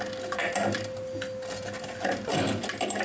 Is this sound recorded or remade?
recorded